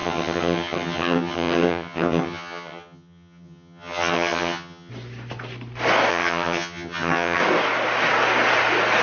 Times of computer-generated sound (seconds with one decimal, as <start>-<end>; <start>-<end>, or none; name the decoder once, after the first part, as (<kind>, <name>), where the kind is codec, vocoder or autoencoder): 0.0-4.9 (vocoder, HiFi-GAN); 6.1-7.4